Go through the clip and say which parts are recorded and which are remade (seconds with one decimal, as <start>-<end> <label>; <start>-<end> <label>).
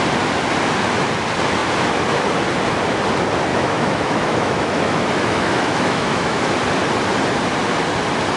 0.0-3.5 recorded; 3.5-6.5 remade; 6.5-8.4 recorded